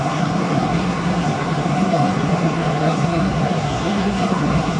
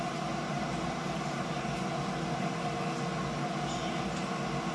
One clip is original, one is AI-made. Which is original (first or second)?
second